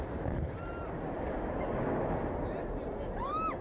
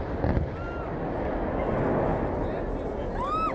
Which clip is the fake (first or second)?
first